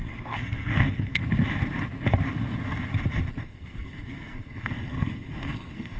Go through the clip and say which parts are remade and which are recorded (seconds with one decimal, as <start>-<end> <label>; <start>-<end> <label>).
0.0-1.2 remade; 1.2-3.4 recorded; 3.4-6.0 remade